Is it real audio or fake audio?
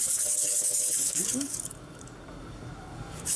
fake